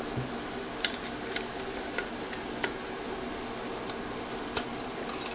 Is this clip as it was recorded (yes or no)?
yes